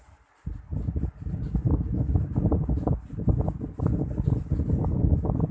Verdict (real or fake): real